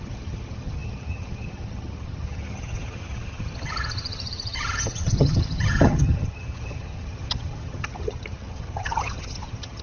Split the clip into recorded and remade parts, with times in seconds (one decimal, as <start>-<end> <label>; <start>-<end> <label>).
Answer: 0.0-9.8 remade